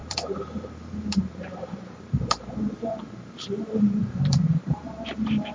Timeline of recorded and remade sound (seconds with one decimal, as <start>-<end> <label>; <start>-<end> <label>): 0.0-5.5 remade